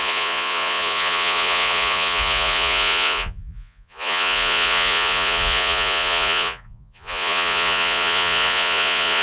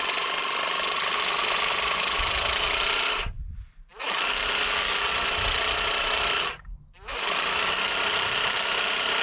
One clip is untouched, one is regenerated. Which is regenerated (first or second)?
first